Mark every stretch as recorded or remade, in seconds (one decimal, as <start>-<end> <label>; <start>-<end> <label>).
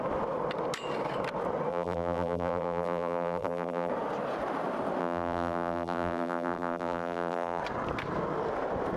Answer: 0.0-1.7 recorded; 1.7-3.9 remade; 3.9-5.0 recorded; 5.0-7.6 remade; 7.6-9.0 recorded